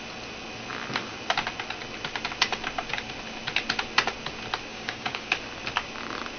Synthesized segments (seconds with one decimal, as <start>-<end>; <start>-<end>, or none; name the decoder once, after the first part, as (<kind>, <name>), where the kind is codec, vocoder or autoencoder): 4.7-5.3 (codec, DAC)